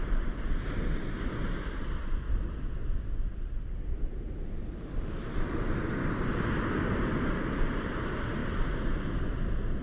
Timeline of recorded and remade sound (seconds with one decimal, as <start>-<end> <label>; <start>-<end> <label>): 0.0-9.8 recorded